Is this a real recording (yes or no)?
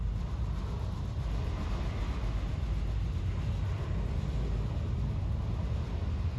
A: yes